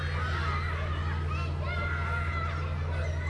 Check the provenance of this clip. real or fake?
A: real